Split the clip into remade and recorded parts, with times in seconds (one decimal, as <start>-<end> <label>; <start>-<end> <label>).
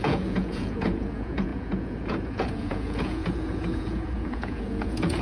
0.0-5.2 remade